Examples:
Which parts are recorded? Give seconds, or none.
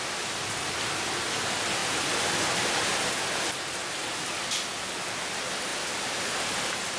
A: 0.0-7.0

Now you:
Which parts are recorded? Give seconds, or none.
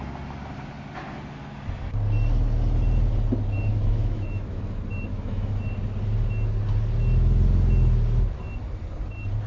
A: 0.0-3.7; 4.6-5.1; 5.6-9.5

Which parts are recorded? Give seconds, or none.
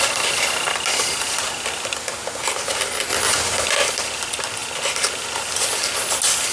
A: 0.0-6.5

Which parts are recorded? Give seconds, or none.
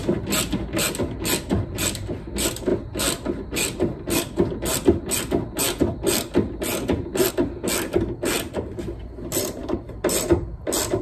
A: 0.0-11.0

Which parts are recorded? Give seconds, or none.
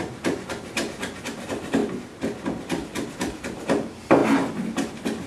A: 0.0-5.3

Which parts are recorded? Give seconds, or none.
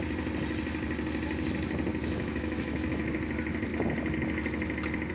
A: 0.0-2.0; 3.1-5.1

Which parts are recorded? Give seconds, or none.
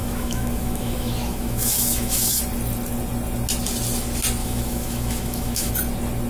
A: 2.4-4.4; 5.7-6.3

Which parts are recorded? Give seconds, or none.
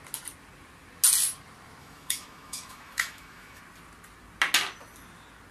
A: 0.0-1.8; 3.6-5.5